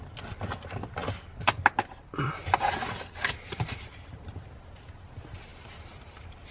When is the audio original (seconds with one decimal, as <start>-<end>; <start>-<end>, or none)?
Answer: 0.0-6.5